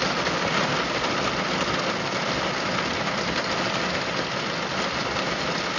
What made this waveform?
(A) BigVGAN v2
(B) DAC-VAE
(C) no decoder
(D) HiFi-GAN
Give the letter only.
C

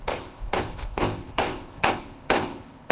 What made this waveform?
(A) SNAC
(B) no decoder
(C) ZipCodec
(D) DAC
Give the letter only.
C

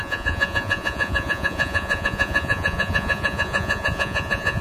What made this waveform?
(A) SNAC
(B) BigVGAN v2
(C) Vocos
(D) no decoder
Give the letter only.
C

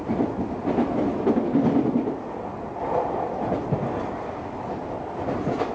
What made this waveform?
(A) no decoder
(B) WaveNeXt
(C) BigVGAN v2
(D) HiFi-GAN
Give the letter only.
A